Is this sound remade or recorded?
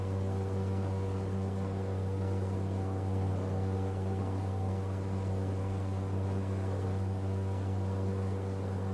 remade